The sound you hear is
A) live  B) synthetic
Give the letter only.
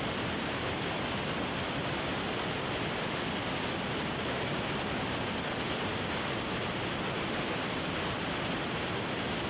A